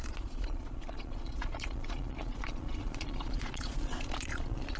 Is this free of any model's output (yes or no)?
no